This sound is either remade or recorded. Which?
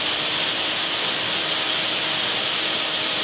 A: recorded